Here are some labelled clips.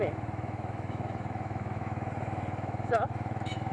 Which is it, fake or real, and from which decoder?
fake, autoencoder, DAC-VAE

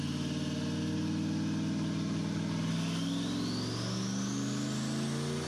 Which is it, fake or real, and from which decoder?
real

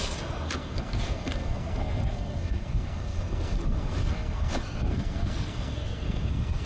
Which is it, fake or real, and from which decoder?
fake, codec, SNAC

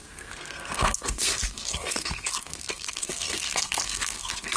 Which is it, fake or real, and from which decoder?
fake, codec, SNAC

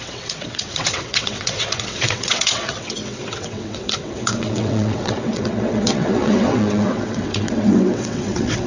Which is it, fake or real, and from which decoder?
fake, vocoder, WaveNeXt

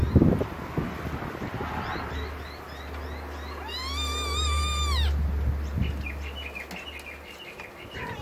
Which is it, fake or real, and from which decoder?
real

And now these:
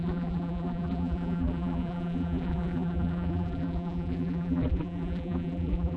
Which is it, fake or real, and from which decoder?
fake, vocoder, BigVGAN v2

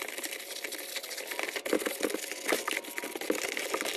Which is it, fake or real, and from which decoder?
real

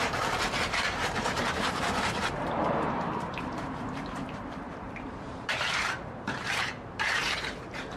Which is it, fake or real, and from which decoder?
fake, vocoder, BigVGAN v2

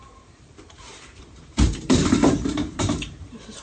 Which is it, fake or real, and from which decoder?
fake, vocoder, BigVGAN v2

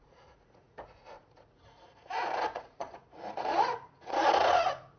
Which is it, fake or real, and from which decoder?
fake, vocoder, Vocos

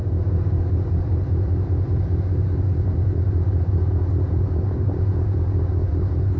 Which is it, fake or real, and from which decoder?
real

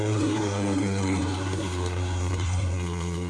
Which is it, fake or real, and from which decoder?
fake, codec, SNAC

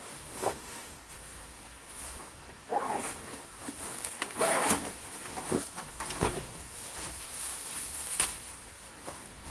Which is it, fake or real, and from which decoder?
fake, codec, DAC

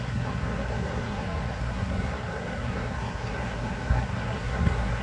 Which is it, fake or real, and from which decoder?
fake, codec, SNAC